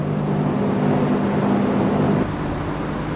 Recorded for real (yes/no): yes